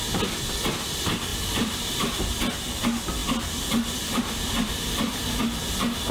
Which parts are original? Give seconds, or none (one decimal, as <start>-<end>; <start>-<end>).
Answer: 0.0-1.3; 2.2-3.2; 5.4-6.1

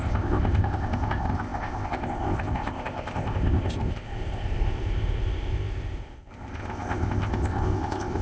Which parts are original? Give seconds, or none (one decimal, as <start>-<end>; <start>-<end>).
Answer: none

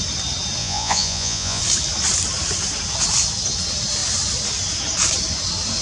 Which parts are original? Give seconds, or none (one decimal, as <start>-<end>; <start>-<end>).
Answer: 0.0-0.6; 1.6-5.8

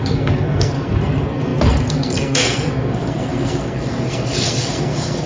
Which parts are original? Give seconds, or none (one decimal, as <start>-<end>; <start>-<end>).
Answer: none

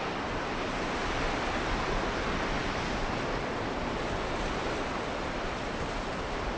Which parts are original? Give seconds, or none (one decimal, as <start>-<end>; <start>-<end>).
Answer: 0.0-2.6; 6.1-6.6